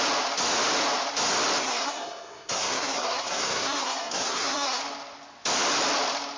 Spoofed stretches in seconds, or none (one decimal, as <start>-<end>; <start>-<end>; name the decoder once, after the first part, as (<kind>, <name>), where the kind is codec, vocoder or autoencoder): 1.6-4.8 (codec, SNAC)